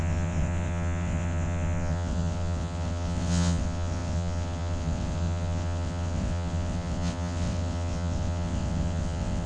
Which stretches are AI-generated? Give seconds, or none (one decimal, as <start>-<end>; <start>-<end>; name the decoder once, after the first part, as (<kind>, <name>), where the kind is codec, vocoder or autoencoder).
0.0-9.5 (vocoder, WaveNeXt)